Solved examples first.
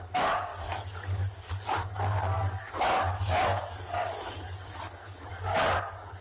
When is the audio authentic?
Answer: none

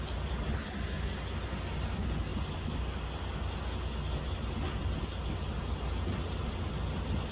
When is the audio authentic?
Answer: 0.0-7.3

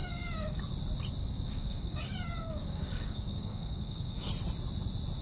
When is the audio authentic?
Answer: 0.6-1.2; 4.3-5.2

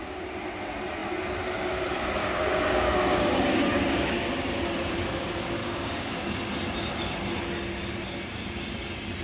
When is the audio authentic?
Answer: 0.0-2.2; 3.3-5.6; 6.2-9.2

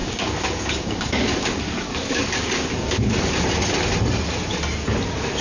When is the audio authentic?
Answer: 3.2-5.4

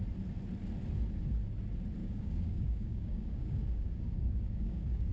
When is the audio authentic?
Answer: 0.0-2.0

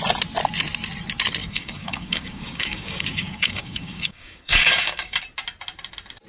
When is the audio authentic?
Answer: 0.0-1.4; 5.2-6.3

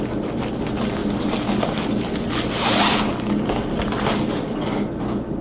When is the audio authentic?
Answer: 0.0-5.4